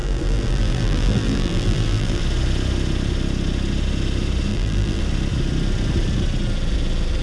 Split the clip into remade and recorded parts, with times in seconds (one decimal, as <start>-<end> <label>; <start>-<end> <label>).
0.0-2.2 remade; 2.2-4.5 recorded; 4.5-5.0 remade; 5.0-7.2 recorded